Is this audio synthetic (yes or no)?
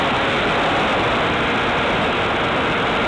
no